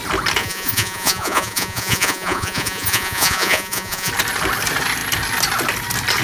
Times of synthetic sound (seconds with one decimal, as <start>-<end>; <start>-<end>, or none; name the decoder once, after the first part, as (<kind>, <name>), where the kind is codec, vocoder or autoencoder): 0.4-4.1 (vocoder, Vocos)